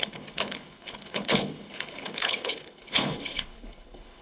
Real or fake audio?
fake